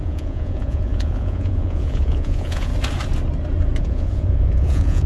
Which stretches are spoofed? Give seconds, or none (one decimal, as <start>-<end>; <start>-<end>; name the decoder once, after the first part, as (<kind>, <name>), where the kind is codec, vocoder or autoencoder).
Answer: 0.0-2.7 (vocoder, Vocos); 3.8-5.1